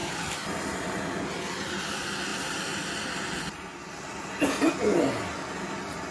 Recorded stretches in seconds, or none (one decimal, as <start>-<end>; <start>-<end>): 1.8-2.3; 5.0-6.1